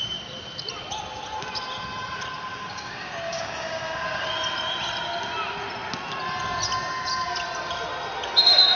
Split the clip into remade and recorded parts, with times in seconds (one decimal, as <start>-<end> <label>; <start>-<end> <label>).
0.0-2.5 recorded; 2.5-4.3 remade; 4.3-8.7 recorded